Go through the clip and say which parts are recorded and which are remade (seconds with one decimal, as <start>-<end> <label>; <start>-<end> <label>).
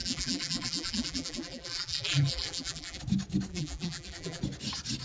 0.0-3.0 remade; 3.0-3.5 recorded; 3.5-4.4 remade; 4.4-5.0 recorded